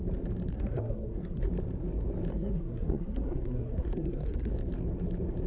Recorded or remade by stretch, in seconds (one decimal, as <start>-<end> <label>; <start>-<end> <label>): 0.0-0.5 recorded; 0.5-1.5 remade; 1.5-2.3 recorded; 2.3-4.5 remade; 4.5-5.5 recorded